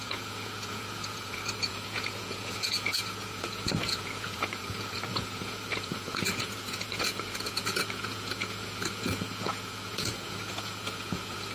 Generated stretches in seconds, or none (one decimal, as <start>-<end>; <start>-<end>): 0.0-11.5